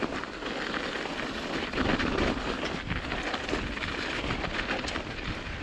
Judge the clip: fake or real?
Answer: real